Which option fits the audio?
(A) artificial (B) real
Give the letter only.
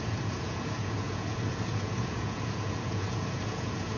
A